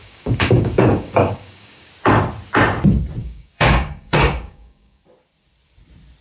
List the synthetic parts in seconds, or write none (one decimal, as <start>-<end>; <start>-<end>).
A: 0.0-1.9; 3.2-5.0